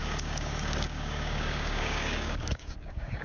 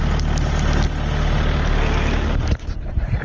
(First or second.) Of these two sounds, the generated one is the first